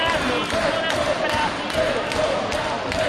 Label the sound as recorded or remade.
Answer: recorded